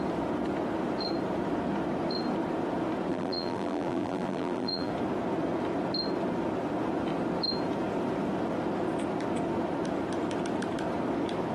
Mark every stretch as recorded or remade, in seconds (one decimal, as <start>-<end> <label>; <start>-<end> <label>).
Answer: 0.0-3.1 recorded; 3.1-4.9 remade; 4.9-11.5 recorded